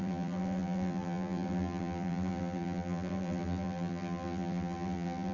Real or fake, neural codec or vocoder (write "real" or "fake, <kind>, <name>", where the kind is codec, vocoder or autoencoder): fake, vocoder, BigVGAN v2